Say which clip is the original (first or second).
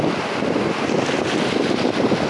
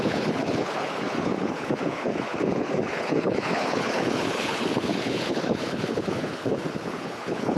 first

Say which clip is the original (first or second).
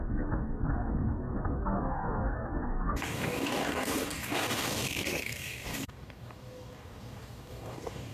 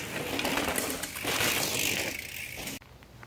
second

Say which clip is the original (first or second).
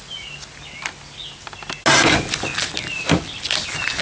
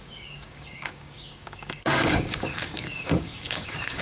first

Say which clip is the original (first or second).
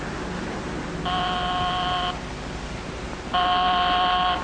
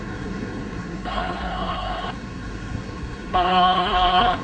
first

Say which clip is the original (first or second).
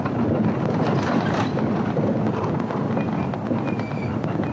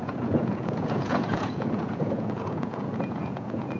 first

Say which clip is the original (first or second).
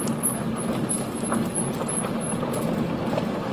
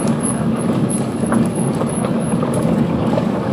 first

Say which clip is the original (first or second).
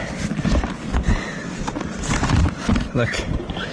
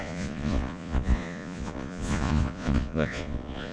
first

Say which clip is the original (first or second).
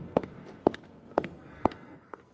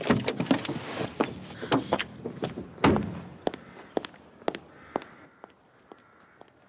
second